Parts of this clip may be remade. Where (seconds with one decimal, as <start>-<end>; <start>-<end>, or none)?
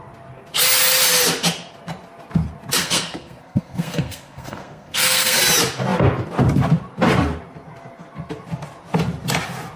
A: 2.8-5.4